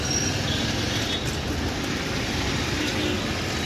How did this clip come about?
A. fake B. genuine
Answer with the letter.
B